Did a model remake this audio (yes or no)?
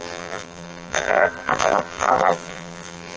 yes